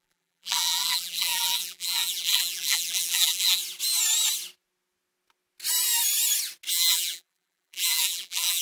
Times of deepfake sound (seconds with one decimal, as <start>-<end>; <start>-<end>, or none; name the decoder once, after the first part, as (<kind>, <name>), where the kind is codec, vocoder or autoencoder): 0.0-3.6 (vocoder, BigVGAN v2); 6.7-8.6